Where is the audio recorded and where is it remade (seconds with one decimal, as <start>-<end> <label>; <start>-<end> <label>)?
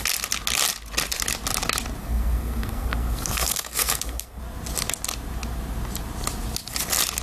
0.0-2.0 recorded; 2.0-4.4 remade; 4.4-7.2 recorded